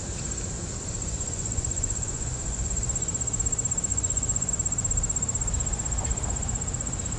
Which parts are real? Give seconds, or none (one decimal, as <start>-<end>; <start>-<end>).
0.0-1.0; 2.7-3.9; 4.5-7.2